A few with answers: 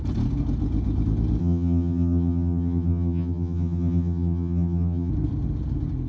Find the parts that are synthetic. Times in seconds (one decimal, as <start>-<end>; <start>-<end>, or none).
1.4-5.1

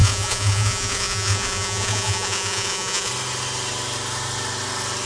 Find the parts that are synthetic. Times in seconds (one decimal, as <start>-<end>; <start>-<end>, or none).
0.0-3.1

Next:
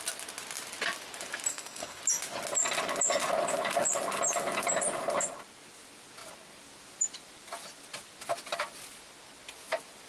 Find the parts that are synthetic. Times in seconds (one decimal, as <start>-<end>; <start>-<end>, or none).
1.5-2.0

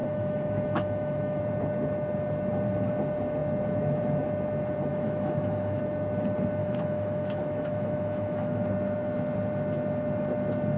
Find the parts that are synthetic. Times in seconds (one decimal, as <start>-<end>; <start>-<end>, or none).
0.0-1.4; 4.9-5.8; 6.6-8.6

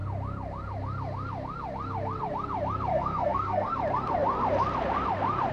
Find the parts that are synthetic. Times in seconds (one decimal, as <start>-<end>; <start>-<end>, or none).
2.9-3.7

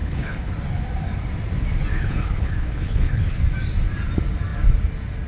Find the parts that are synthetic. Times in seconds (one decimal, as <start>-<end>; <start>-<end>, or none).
0.0-0.5; 1.9-3.4

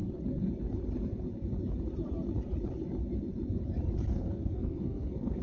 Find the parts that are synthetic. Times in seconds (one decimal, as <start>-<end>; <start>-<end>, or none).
4.1-5.4

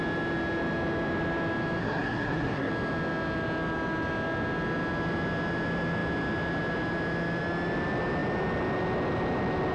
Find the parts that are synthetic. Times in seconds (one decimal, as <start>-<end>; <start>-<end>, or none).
1.8-2.7